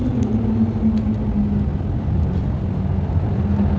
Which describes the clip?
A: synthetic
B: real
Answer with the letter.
B